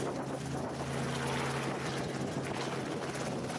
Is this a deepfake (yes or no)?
no